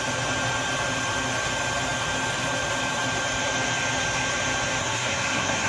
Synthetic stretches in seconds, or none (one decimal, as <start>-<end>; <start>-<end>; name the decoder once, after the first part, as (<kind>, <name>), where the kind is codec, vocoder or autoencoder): 4.8-5.7 (codec, SNAC)